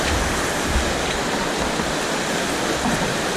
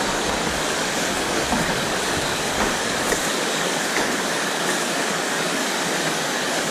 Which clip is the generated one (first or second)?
second